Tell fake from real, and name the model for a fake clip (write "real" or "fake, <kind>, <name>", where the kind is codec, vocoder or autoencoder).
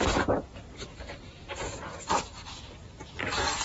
real